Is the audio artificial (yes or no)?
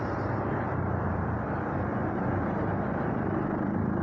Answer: yes